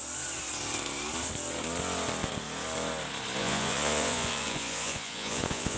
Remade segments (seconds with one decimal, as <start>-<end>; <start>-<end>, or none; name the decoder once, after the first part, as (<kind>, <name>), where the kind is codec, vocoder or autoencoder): 3.4-5.8 (vocoder, Vocos)